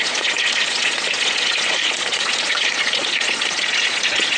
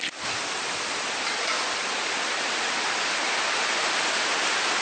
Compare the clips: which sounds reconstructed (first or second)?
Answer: first